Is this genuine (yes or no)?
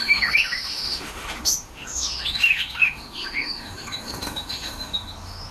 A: no